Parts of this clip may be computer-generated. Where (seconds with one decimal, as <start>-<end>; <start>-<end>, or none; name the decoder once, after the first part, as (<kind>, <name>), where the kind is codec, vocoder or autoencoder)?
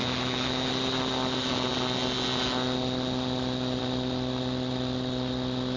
0.0-0.7 (autoencoder, DAC-VAE)